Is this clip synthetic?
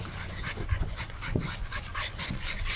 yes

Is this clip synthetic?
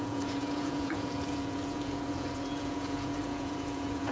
yes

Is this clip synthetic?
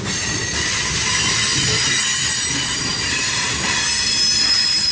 no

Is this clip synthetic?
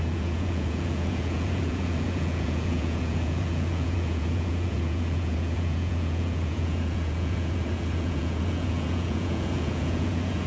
yes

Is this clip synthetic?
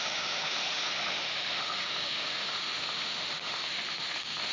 yes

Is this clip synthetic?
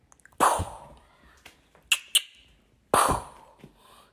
no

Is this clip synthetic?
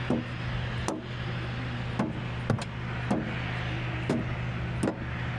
no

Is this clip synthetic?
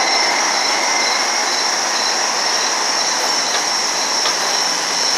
no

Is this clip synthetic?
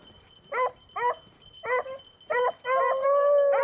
no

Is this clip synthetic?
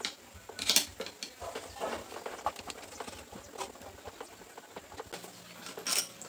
no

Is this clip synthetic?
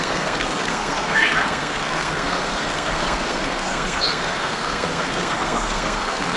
yes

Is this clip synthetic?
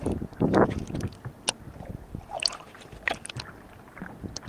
no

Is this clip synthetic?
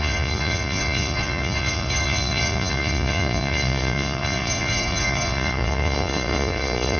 yes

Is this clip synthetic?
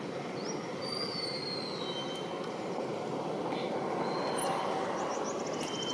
no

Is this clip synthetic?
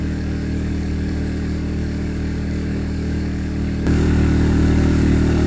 yes